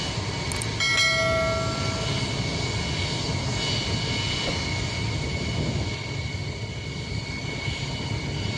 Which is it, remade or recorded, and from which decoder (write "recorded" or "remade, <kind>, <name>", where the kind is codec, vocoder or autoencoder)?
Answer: recorded